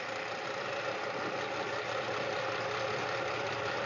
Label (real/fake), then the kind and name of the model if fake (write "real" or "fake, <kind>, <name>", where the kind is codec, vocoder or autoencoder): real